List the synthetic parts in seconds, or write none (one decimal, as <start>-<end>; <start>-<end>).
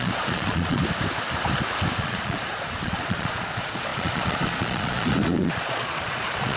0.0-0.8; 2.0-6.6